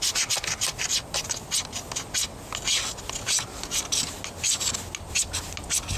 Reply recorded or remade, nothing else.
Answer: recorded